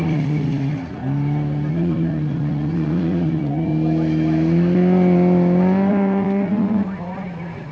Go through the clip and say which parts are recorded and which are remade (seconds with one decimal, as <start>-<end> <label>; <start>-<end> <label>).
0.0-1.0 remade; 1.0-1.7 recorded; 1.7-3.7 remade; 3.7-5.9 recorded; 5.9-7.7 remade